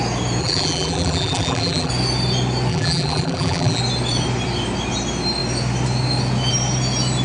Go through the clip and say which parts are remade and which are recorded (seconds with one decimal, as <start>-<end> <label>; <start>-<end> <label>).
0.0-0.4 recorded; 0.4-1.9 remade; 1.9-2.7 recorded; 2.7-3.8 remade; 3.8-7.2 recorded